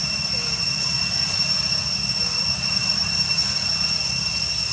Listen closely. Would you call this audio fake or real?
real